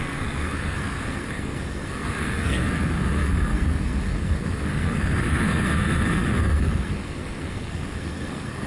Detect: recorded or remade remade